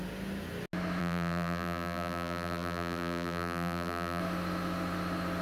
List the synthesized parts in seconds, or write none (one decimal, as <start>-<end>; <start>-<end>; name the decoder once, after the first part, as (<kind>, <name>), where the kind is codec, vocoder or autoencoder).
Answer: 1.0-4.2 (vocoder, BigVGAN v2)